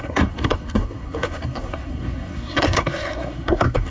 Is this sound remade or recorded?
remade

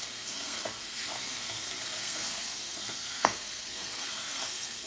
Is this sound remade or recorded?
remade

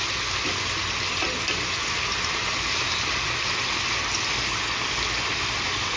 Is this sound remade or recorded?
recorded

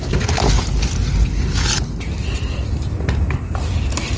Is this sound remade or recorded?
recorded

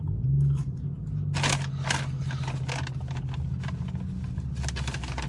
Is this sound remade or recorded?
recorded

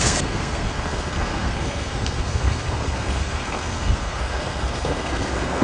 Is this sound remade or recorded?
remade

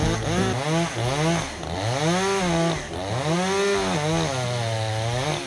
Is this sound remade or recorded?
recorded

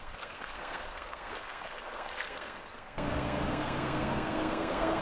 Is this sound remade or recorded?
remade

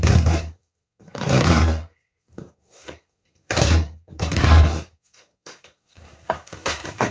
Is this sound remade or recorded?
remade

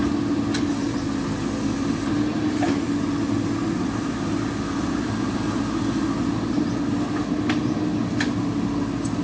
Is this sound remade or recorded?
recorded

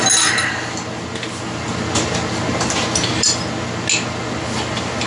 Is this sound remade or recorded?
recorded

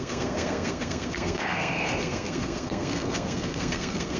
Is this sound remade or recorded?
remade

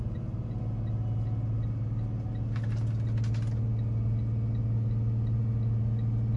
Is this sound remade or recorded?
recorded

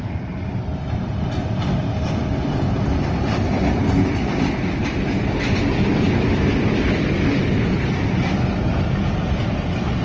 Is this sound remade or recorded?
recorded